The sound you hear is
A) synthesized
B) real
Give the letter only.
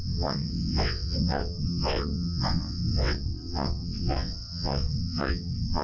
A